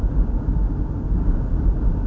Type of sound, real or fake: fake